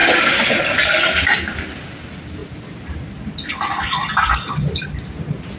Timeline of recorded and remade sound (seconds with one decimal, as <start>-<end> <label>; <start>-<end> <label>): 0.0-5.6 recorded